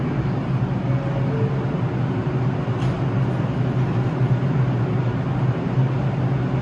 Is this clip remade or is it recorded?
recorded